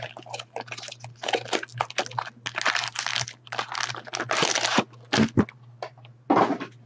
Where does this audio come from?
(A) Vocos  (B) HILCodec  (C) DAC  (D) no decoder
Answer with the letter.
D